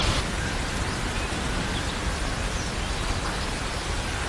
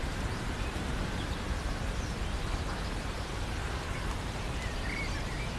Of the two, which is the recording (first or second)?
first